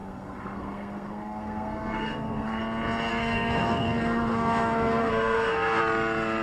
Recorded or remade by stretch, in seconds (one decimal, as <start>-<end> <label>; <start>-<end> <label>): 0.0-2.6 remade; 2.6-3.1 recorded; 3.1-5.8 remade; 5.8-6.4 recorded